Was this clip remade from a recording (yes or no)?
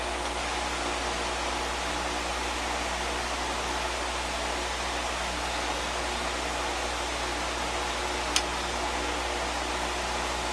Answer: no